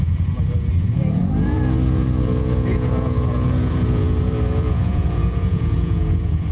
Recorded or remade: remade